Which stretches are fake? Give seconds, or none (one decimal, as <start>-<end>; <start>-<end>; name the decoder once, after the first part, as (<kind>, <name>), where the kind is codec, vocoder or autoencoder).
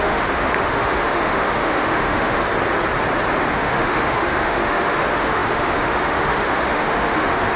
0.0-2.4 (autoencoder, DAC-VAE); 3.5-7.6